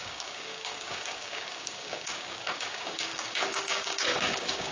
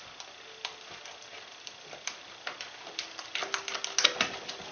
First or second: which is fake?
first